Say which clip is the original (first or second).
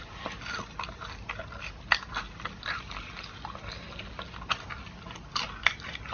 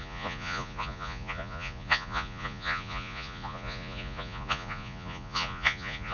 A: first